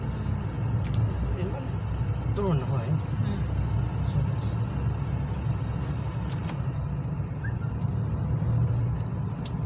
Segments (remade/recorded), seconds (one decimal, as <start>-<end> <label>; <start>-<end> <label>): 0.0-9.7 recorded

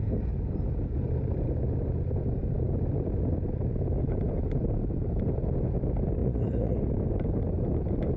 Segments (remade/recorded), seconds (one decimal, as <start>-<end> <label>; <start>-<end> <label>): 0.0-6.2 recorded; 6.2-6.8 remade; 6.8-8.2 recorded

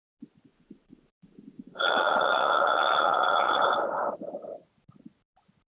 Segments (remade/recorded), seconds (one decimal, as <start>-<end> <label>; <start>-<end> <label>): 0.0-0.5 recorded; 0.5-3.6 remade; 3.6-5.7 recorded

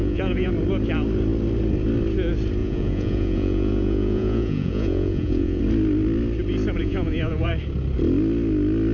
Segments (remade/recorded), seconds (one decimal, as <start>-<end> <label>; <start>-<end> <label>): 0.0-0.5 remade; 0.5-2.6 recorded; 2.6-5.6 remade; 5.6-6.8 recorded; 6.8-7.5 remade; 7.5-8.9 recorded

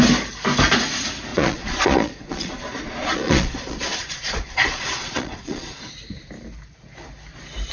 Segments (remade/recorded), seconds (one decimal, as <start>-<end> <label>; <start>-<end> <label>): 0.0-1.3 recorded; 1.3-5.9 remade; 5.9-7.7 recorded